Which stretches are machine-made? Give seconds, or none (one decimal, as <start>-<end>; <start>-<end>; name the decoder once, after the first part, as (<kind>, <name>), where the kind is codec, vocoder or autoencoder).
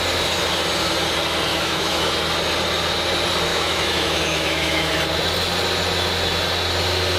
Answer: 1.5-2.1 (autoencoder, DAC-VAE); 3.5-4.9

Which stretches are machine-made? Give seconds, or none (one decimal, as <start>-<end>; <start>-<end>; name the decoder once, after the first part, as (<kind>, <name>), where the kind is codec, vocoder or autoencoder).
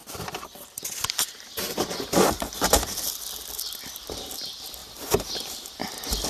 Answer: 0.0-4.8 (vocoder, BigVGAN v2)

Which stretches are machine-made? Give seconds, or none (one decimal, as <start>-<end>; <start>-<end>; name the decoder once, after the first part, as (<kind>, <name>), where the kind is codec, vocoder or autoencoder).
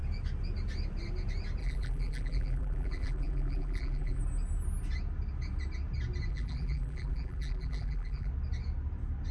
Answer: 1.6-4.2 (vocoder, BigVGAN v2); 6.3-8.3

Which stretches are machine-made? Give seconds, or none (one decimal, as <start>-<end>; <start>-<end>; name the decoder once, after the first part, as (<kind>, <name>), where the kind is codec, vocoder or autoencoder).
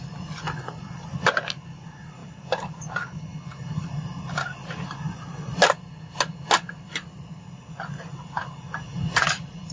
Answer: none